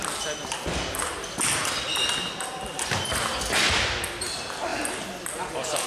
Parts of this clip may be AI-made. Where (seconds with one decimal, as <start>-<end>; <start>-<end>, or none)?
none

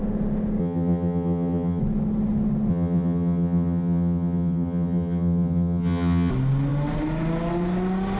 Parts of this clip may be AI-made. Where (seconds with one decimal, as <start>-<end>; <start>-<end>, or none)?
0.6-1.8; 2.7-6.3

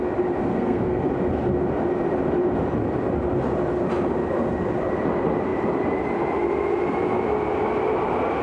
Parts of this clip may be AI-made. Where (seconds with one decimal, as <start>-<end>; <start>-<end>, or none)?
0.5-1.0

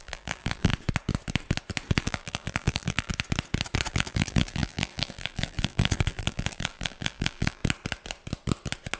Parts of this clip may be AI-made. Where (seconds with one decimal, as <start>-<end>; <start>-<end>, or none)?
0.0-0.7; 2.0-3.1; 3.9-7.6

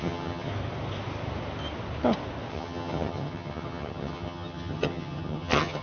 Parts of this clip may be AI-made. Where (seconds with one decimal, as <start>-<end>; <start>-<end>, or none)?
0.0-0.5; 2.5-5.8

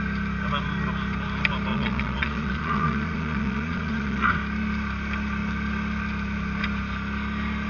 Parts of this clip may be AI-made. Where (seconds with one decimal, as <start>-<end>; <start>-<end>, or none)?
1.7-4.3

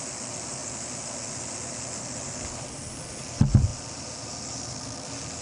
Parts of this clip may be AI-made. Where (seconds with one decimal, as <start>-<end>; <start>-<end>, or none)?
0.0-5.4